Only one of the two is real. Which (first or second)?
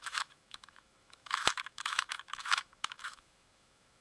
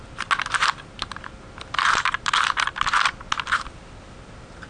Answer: second